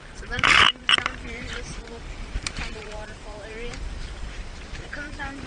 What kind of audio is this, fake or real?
fake